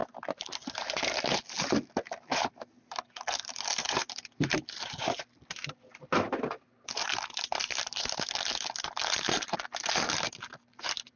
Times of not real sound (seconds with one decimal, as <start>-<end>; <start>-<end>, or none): none

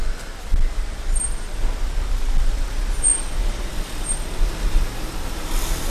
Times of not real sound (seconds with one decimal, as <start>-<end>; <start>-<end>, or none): none

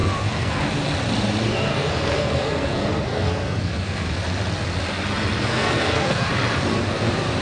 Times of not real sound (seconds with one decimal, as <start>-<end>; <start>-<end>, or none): 0.0-0.6; 1.7-4.2; 5.5-6.3

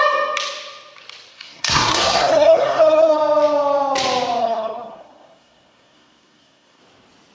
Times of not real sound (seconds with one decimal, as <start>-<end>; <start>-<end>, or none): 1.3-3.2; 4.4-6.8

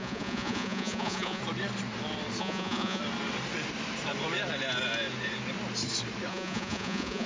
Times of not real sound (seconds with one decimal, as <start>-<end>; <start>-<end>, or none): 0.0-1.4; 2.4-3.0; 6.3-7.3